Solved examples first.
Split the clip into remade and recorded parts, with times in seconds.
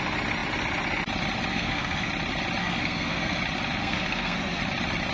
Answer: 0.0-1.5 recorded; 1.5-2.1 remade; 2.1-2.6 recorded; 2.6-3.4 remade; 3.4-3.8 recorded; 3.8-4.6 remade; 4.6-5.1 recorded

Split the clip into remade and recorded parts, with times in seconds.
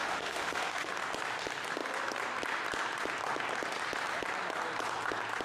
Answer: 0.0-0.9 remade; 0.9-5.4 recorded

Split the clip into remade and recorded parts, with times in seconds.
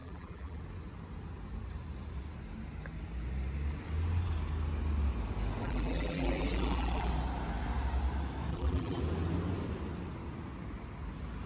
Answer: 0.0-0.6 remade; 0.6-5.6 recorded; 5.6-7.1 remade; 7.1-8.5 recorded; 8.5-9.0 remade; 9.0-11.5 recorded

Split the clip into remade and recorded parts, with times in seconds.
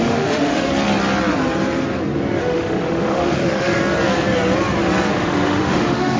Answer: 0.0-0.7 remade; 0.7-2.4 recorded; 2.4-3.8 remade; 3.8-5.1 recorded; 5.1-6.2 remade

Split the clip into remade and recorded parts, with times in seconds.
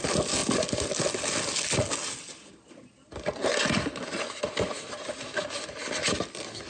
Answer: 0.0-6.7 recorded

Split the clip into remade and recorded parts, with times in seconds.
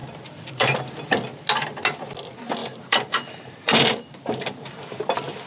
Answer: 0.0-0.8 remade; 0.8-2.6 recorded; 2.6-5.0 remade; 5.0-5.5 recorded